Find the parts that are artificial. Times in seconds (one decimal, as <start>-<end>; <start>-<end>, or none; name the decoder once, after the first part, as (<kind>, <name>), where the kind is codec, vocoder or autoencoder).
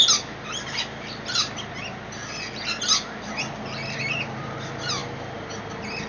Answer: none